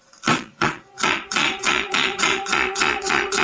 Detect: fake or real fake